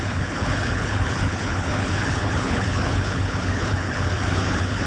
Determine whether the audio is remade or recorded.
remade